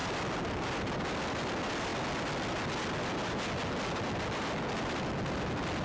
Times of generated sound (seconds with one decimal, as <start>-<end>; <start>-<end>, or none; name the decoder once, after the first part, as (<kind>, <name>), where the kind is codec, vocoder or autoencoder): none